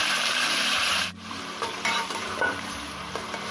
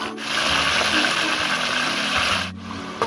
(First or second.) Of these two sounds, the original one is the second